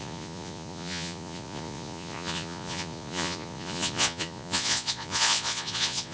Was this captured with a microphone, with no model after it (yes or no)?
no